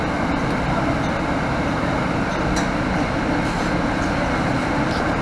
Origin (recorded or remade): recorded